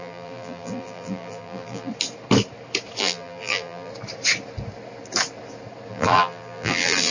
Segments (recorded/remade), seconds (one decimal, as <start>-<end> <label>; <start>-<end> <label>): 0.0-1.9 remade; 1.9-3.0 recorded; 3.0-3.9 remade; 3.9-5.9 recorded; 5.9-7.1 remade